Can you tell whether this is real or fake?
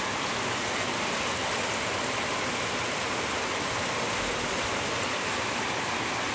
real